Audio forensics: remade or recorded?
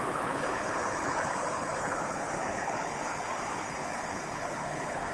remade